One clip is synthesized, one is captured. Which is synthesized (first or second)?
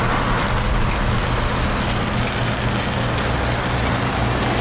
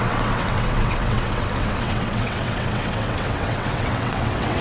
second